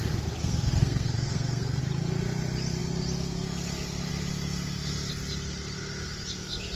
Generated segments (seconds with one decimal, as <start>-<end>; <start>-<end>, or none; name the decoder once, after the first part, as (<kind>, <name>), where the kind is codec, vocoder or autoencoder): 0.4-1.8 (codec, SNAC)